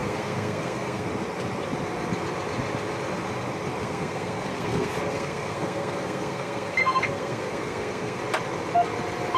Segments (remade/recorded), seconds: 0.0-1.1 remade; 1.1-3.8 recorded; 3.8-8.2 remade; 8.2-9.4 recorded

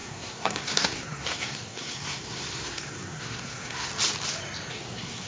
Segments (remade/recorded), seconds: 0.0-3.9 remade; 3.9-4.7 recorded; 4.7-5.3 remade

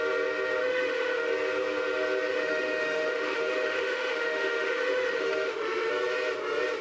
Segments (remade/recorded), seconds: 0.0-0.6 recorded; 0.6-1.3 remade; 1.3-2.3 recorded; 2.3-5.9 remade; 5.9-6.8 recorded

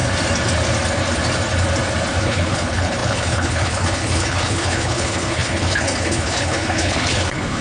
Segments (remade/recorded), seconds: 0.0-2.2 recorded; 2.2-7.6 remade

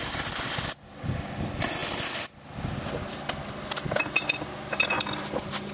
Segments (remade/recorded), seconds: 0.0-5.7 recorded